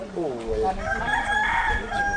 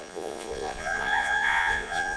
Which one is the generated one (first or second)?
second